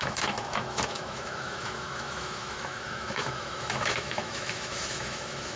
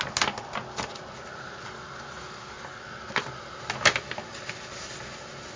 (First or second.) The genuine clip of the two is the second